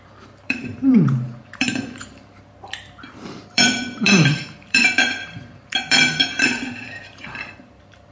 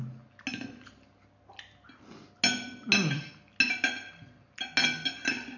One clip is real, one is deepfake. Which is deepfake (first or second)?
first